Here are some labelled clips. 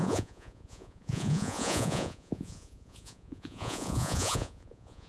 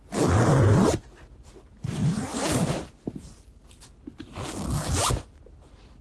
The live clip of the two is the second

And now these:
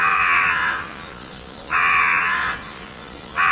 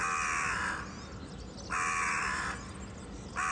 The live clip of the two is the second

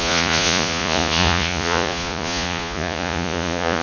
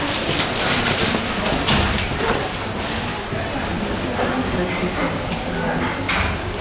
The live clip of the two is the second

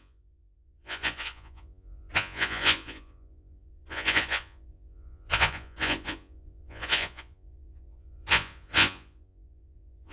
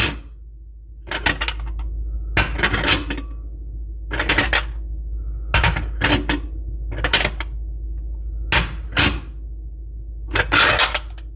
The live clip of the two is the second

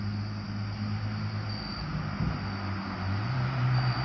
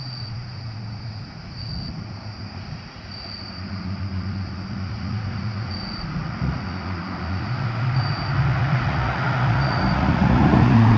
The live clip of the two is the first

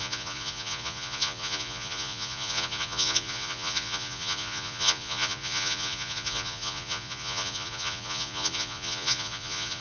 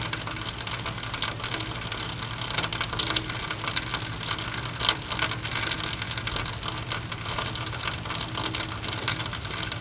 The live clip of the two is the second